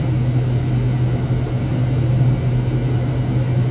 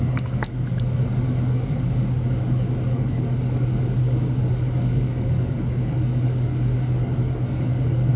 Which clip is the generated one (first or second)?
second